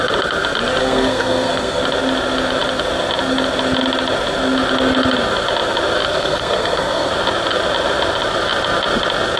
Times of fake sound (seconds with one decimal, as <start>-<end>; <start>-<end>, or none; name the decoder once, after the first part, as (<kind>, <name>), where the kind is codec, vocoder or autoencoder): 0.8-1.8 (codec, SNAC); 6.1-7.1